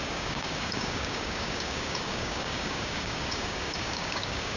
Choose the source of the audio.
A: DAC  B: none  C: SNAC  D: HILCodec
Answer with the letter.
A